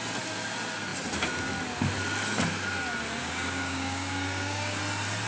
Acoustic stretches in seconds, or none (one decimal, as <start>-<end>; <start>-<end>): 0.0-3.2; 4.8-5.3

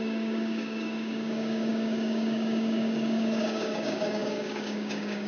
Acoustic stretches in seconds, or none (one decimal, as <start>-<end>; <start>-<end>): none

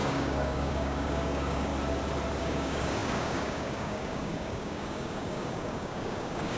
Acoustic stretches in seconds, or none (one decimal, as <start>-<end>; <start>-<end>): 1.7-2.4

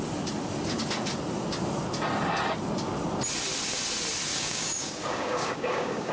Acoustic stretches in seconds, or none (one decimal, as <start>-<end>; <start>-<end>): 0.0-4.3

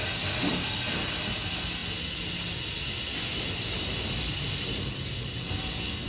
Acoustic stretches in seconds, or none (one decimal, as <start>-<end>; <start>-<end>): 0.0-6.1

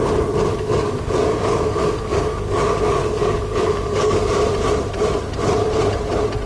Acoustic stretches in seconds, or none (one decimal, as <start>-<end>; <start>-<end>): 0.0-0.5; 4.4-6.5

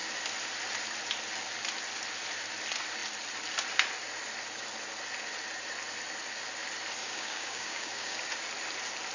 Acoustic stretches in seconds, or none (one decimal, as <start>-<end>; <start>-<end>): 0.0-7.0; 8.3-9.1

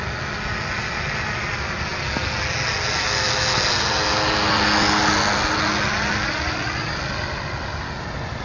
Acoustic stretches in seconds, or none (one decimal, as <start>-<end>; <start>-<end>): 0.0-8.4